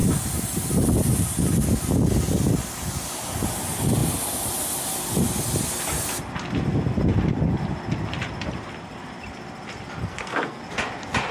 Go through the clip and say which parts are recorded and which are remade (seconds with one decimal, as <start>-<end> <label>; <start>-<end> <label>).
0.0-10.0 recorded; 10.0-10.6 remade; 10.6-11.3 recorded